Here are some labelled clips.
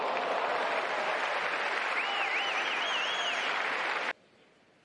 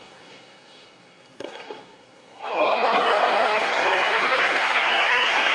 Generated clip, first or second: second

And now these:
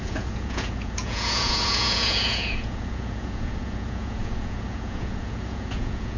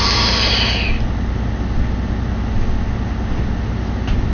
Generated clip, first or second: first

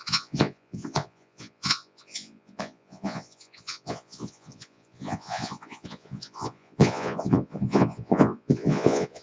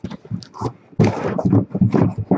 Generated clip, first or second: first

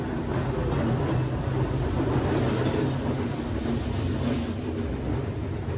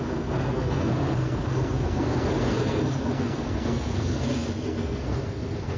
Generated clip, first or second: second